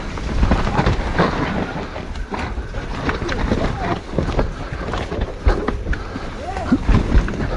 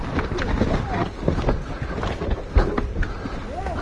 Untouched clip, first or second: second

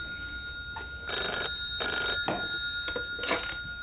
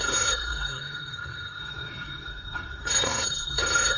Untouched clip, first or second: first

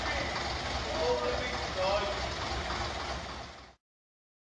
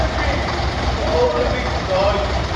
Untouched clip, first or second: first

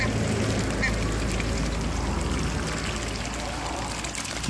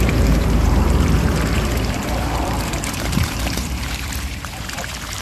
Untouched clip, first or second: first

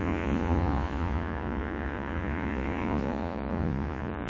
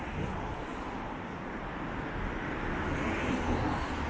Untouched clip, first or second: second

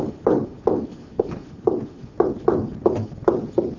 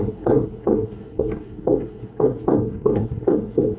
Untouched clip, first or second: first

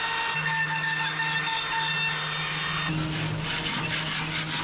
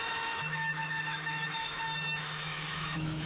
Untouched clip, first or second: first